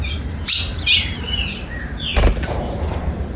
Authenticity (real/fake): fake